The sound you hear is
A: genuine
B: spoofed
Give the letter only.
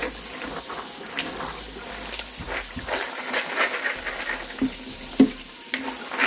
A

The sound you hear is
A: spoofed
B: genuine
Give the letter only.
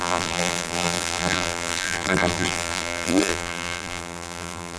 A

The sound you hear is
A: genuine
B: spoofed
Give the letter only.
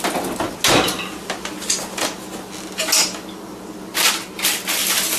A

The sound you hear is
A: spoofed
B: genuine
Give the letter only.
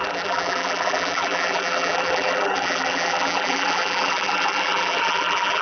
A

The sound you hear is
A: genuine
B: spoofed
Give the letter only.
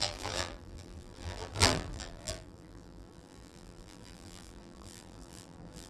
B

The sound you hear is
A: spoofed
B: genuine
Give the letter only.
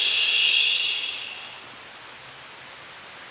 B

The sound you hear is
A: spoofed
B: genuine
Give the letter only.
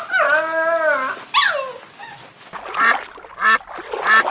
B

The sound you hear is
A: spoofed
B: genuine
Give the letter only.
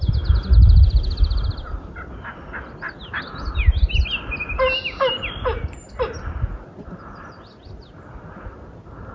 B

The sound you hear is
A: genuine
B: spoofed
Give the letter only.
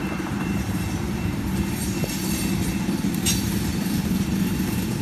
B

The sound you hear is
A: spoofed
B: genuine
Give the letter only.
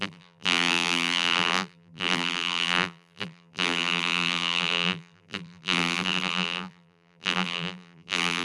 A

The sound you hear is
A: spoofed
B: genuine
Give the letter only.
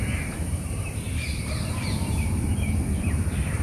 A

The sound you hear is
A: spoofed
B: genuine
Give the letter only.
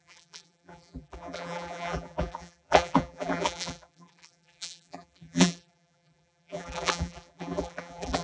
A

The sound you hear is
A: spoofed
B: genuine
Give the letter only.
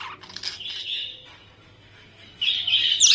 B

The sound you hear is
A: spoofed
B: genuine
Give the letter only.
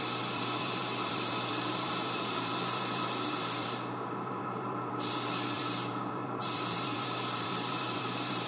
A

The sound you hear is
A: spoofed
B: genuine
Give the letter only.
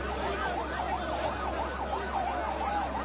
B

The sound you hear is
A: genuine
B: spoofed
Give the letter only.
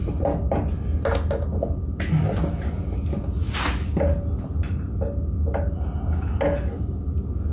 A